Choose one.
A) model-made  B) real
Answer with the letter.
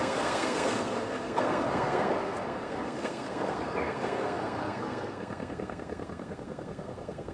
A